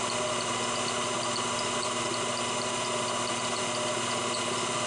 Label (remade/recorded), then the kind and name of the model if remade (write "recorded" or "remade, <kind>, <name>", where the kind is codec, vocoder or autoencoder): recorded